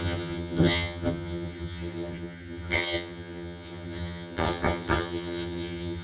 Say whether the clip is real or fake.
fake